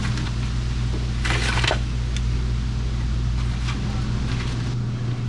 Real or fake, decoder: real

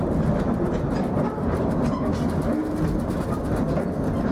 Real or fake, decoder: real